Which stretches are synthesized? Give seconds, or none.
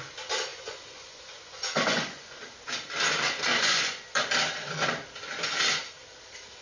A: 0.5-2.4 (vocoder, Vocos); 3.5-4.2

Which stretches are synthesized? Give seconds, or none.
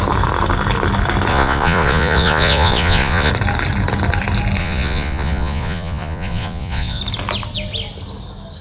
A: 1.3-3.3 (vocoder, Vocos); 4.6-7.0